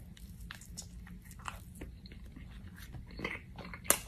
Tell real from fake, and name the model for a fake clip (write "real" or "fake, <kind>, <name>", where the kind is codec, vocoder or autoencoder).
real